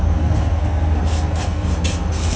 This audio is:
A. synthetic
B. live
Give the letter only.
A